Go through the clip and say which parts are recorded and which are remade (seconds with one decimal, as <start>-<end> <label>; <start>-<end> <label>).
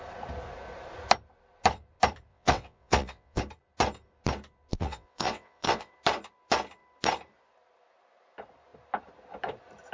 0.0-2.3 recorded; 2.3-3.4 remade; 3.4-4.7 recorded; 4.7-5.9 remade; 5.9-9.9 recorded